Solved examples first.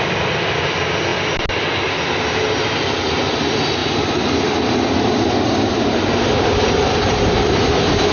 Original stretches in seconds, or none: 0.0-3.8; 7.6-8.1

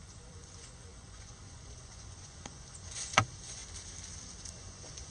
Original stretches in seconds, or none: 3.6-4.4

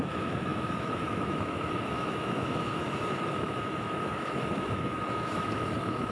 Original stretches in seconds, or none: none

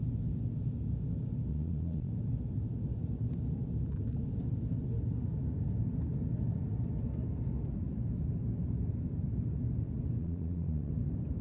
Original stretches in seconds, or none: 0.0-1.5; 2.1-10.2; 10.9-11.4